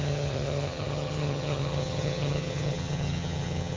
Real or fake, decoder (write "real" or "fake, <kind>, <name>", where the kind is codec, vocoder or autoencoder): fake, vocoder, HiFi-GAN